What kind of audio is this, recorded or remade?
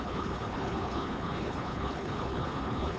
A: remade